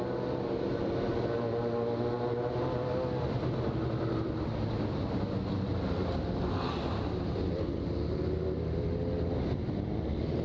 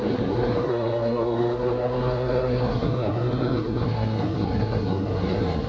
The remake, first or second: second